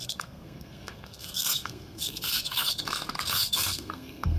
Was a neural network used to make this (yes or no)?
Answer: yes